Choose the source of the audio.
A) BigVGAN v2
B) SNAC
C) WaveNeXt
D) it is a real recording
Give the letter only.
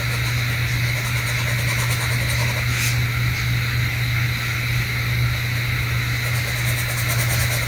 D